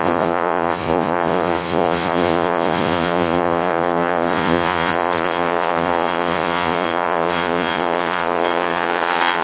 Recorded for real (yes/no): no